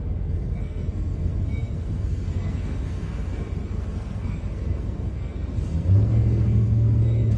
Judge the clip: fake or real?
fake